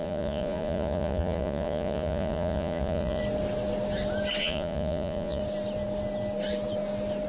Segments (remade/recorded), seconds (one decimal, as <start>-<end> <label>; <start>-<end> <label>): 0.0-3.2 remade; 3.2-4.4 recorded; 4.4-5.4 remade; 5.4-7.3 recorded